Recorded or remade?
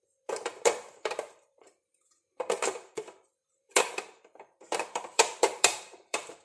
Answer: remade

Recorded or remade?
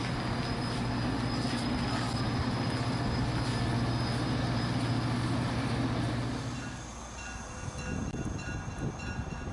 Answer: recorded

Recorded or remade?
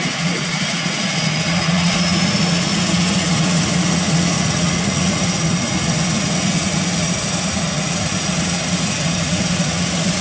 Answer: remade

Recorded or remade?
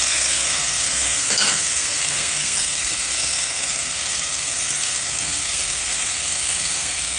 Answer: remade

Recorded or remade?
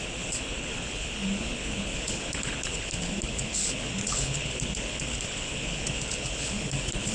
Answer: remade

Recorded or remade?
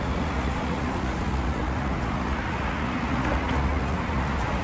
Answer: remade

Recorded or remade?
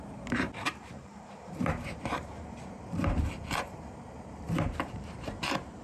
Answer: remade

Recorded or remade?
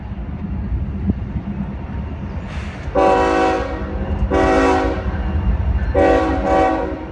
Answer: recorded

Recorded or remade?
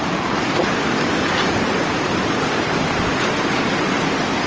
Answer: recorded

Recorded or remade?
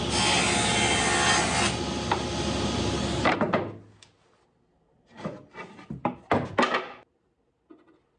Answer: recorded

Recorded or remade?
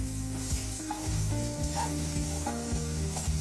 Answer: remade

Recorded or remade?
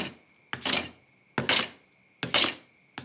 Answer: recorded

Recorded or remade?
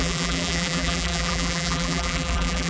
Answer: remade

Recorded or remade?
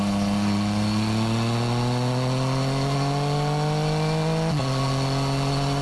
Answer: recorded